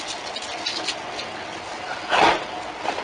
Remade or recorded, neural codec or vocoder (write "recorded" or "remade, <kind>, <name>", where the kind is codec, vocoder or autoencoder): recorded